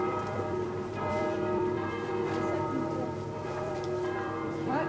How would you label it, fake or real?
fake